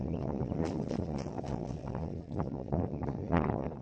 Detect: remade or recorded remade